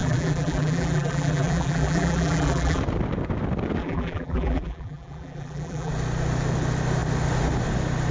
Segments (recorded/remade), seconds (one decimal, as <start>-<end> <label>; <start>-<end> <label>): 0.0-2.8 remade; 2.8-3.8 recorded; 3.8-5.9 remade; 5.9-8.1 recorded